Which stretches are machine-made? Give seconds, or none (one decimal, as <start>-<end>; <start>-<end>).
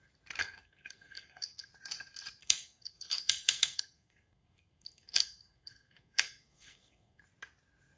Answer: 0.4-1.7; 2.4-7.2